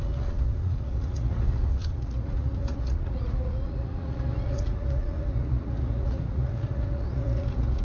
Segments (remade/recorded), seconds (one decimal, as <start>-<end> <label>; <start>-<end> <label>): 0.0-7.8 remade

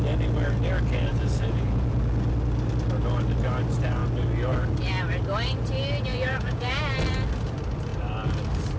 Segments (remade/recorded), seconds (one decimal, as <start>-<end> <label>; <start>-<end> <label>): 0.0-1.1 recorded; 1.1-2.0 remade; 2.0-6.1 recorded; 6.1-6.8 remade; 6.8-8.8 recorded

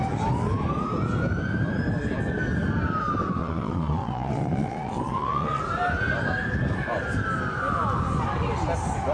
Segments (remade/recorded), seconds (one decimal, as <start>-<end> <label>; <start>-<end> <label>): 0.0-3.4 recorded; 3.4-5.6 remade; 5.6-9.1 recorded